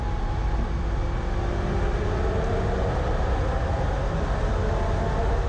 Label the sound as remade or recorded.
recorded